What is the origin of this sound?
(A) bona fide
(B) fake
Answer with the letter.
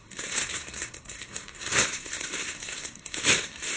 B